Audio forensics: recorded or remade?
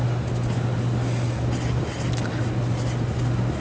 recorded